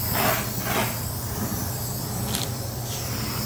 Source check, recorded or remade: remade